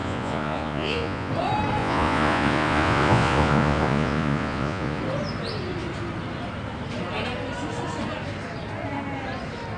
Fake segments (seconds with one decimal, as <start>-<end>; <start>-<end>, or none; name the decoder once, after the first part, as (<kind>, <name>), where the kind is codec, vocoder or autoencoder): 0.0-1.3 (vocoder, Vocos); 1.8-5.0